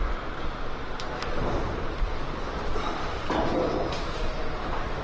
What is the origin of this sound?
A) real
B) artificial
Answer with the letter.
A